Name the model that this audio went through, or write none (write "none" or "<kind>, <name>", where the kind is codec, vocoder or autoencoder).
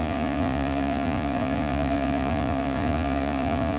vocoder, Vocos